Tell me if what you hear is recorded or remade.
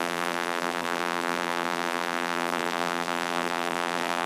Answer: remade